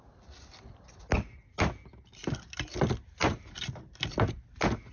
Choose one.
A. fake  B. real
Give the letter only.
B